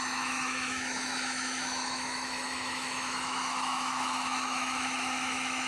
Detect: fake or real fake